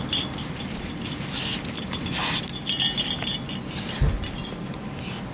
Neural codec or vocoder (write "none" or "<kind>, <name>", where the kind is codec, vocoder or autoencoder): none